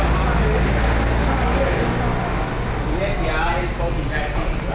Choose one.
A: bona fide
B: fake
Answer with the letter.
A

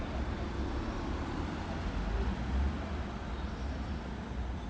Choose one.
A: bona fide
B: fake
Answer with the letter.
A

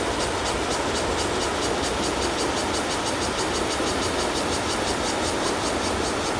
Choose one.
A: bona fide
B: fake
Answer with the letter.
A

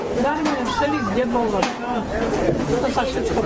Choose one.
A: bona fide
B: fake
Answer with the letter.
B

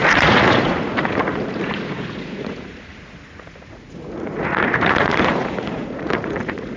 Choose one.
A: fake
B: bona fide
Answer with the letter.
A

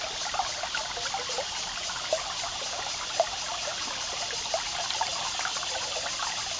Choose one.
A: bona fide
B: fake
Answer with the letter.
A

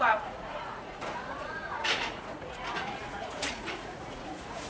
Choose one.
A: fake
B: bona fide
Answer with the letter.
A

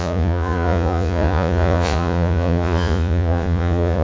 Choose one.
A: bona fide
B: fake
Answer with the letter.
B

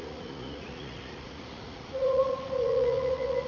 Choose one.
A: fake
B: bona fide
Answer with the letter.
A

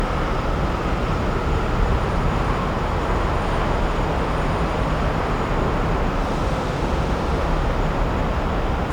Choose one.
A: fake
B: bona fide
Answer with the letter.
B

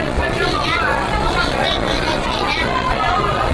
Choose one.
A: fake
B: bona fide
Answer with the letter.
A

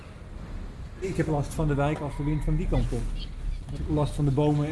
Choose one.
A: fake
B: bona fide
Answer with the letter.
B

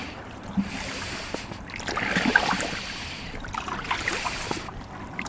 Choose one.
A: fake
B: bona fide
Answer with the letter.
B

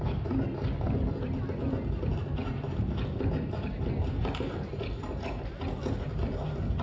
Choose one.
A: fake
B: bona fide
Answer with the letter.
B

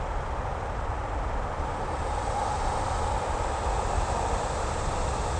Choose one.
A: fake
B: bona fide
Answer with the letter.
B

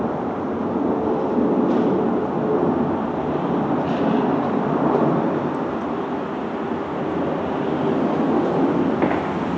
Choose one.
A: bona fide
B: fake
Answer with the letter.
A